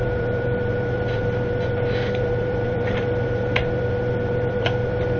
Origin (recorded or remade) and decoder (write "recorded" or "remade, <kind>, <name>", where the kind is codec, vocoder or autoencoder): remade, vocoder, BigVGAN v2